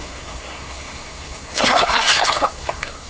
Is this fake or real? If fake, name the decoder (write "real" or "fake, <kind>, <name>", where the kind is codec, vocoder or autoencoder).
fake, codec, SNAC